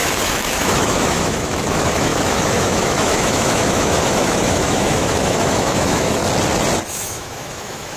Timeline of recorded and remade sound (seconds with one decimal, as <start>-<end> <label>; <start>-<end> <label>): 0.0-6.2 remade; 6.2-6.9 recorded; 6.9-8.0 remade

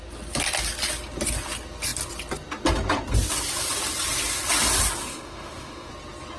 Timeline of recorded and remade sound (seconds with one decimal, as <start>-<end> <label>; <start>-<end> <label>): 0.0-5.0 recorded; 5.0-5.9 remade; 5.9-6.4 recorded

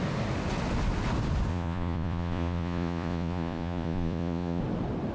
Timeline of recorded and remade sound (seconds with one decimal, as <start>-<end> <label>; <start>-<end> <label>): 0.0-1.5 recorded; 1.5-4.6 remade; 4.6-5.1 recorded

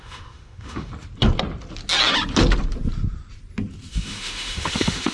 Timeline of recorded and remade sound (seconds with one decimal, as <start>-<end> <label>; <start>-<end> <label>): 0.0-0.9 remade; 0.9-3.9 recorded; 3.9-5.1 remade

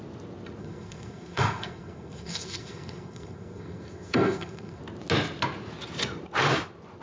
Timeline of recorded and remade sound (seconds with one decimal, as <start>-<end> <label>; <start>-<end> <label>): 0.0-0.6 recorded; 0.6-4.8 remade; 4.8-7.0 recorded

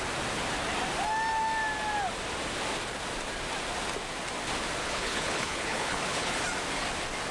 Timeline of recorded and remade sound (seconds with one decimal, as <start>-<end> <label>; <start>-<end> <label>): 0.0-4.8 recorded; 4.8-6.4 remade; 6.4-7.3 recorded